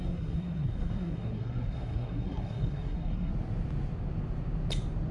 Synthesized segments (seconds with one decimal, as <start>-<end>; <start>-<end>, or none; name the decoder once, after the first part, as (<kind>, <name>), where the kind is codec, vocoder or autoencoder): 0.0-3.3 (codec, SNAC)